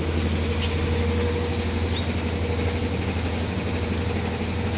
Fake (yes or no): no